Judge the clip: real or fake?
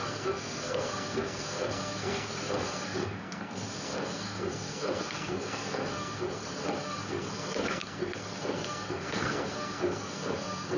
fake